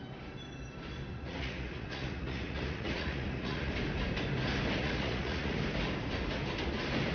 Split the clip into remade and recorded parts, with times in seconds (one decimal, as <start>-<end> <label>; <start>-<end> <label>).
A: 0.0-1.1 recorded; 1.1-3.7 remade; 3.7-4.8 recorded; 4.8-5.6 remade; 5.6-7.1 recorded